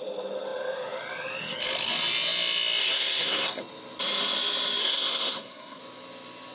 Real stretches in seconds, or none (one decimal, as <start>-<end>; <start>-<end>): 0.0-2.8; 3.6-4.8; 5.8-6.5